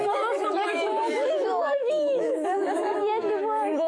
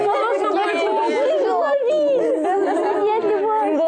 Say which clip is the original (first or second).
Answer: second